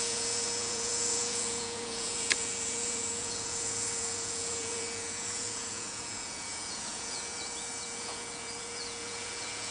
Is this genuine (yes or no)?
no